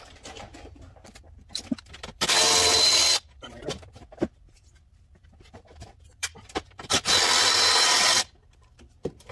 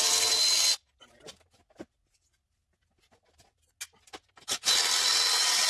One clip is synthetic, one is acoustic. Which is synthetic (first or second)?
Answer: first